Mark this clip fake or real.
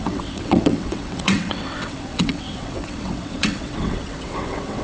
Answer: fake